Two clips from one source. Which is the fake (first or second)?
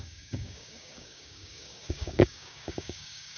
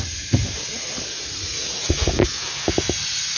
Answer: first